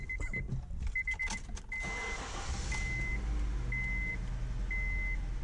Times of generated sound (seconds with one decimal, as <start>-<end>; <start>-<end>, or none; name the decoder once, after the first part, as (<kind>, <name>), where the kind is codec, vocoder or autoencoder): none

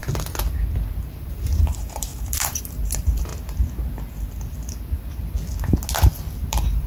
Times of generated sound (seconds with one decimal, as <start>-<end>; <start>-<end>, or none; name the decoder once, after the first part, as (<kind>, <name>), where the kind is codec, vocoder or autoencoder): 1.2-3.3 (vocoder, BigVGAN v2); 6.5-6.9